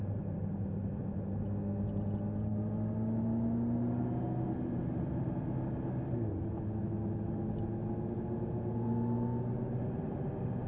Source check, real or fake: real